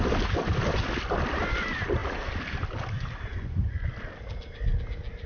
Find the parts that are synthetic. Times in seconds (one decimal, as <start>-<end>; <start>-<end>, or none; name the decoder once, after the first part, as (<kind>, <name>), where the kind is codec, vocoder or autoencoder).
3.3-3.9 (vocoder, Vocos)